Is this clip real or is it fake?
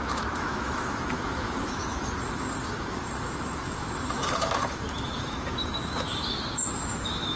fake